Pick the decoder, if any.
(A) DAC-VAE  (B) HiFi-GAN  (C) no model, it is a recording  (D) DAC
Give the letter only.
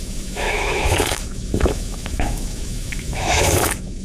A